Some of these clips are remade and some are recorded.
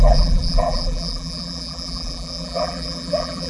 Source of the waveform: remade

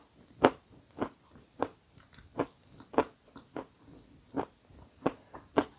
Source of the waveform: recorded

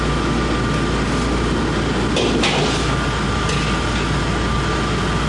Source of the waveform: recorded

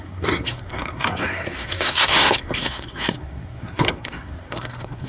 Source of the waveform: remade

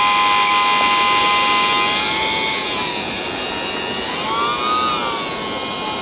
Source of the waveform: recorded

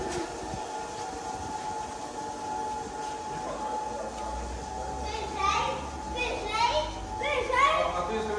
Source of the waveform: recorded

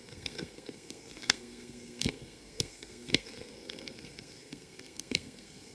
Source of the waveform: remade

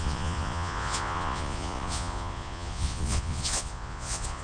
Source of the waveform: remade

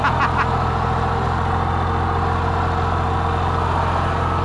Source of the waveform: recorded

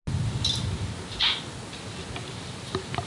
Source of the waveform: recorded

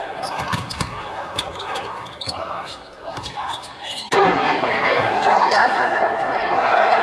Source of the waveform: remade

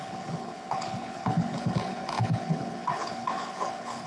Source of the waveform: remade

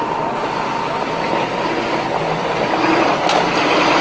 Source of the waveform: recorded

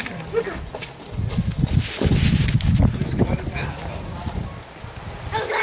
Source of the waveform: recorded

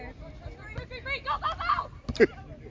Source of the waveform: recorded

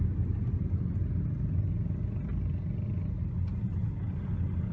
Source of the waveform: recorded